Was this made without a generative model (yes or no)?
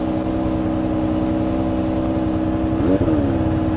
yes